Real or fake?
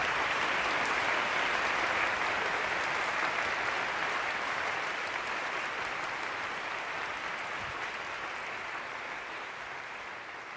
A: real